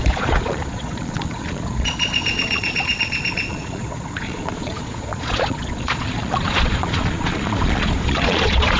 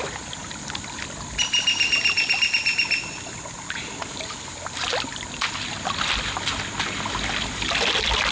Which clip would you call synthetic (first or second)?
first